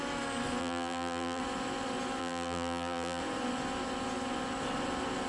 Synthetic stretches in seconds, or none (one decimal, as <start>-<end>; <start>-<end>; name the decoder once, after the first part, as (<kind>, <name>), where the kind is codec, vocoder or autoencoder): 0.6-1.4 (vocoder, BigVGAN v2); 2.2-3.2